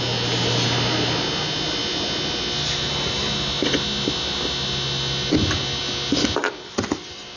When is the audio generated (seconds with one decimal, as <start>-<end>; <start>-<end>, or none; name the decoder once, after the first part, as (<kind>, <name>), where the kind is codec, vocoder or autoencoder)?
none